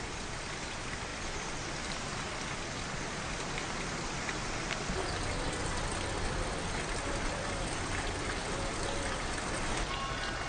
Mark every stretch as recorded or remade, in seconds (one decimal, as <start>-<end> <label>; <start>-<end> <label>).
0.0-10.5 recorded

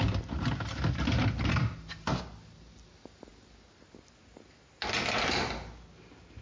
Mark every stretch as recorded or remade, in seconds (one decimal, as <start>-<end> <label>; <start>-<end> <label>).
0.0-6.4 recorded

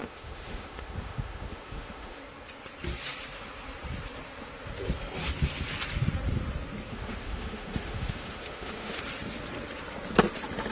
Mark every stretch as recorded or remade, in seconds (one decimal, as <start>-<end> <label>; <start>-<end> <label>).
0.0-2.2 remade; 2.2-6.9 recorded; 6.9-9.0 remade; 9.0-10.7 recorded

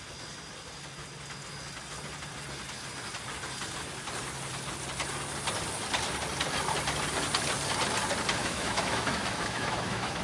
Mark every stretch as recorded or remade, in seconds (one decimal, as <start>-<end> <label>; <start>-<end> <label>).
0.0-8.4 recorded; 8.4-10.2 remade

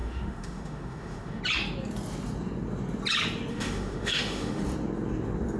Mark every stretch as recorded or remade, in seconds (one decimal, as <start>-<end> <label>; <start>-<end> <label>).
0.0-1.4 remade; 1.4-3.5 recorded; 3.5-4.6 remade; 4.6-5.6 recorded

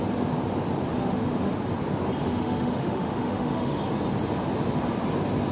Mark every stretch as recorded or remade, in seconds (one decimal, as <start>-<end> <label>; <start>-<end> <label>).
0.0-0.9 recorded; 0.9-1.5 remade; 1.5-2.2 recorded; 2.2-3.8 remade; 3.8-5.5 recorded

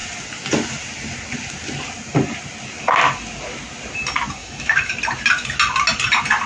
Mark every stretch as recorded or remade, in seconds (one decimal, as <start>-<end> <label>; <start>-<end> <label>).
0.0-4.4 recorded; 4.4-4.9 remade; 4.9-6.5 recorded